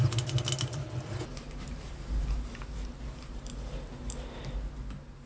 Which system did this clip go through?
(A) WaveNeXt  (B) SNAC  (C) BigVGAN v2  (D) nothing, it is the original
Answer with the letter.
D